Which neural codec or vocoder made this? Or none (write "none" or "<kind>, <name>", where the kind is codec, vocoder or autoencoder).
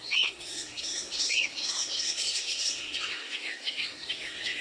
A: codec, SNAC